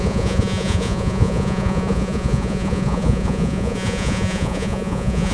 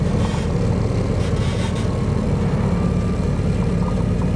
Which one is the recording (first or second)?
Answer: second